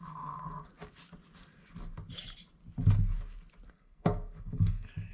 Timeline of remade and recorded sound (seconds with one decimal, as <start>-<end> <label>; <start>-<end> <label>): 0.0-0.7 remade; 0.7-3.7 recorded; 3.7-5.1 remade